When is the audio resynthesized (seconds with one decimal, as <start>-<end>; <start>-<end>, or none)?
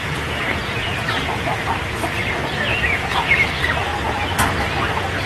0.0-0.9; 2.7-3.3